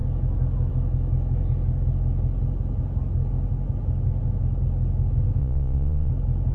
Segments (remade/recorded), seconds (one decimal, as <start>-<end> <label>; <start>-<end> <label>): 0.0-5.4 recorded; 5.4-6.1 remade; 6.1-6.5 recorded